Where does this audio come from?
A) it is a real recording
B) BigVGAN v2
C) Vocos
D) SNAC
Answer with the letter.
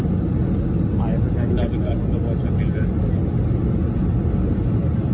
A